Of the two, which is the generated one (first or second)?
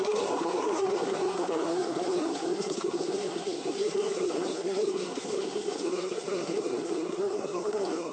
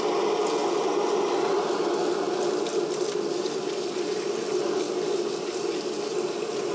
first